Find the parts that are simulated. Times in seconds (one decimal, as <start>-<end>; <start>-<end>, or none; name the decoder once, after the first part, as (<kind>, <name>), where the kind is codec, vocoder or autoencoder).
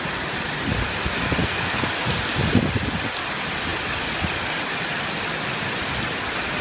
1.4-1.9 (codec, SNAC)